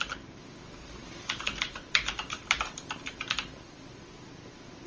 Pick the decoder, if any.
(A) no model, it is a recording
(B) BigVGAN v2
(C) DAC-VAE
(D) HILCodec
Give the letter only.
B